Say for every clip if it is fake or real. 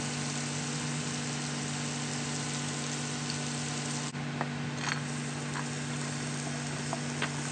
real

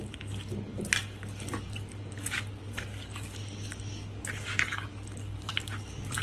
fake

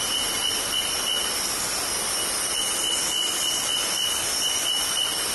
real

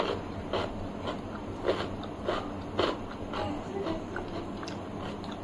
real